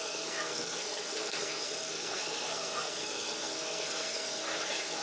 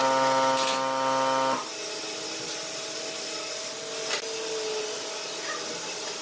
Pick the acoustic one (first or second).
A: second